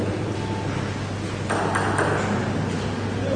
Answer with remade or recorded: recorded